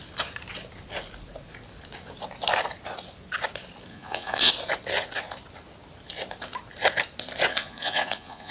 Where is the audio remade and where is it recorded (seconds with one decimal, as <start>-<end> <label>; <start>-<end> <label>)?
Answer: 0.0-3.9 recorded; 3.9-4.5 remade; 4.5-7.5 recorded; 7.5-8.5 remade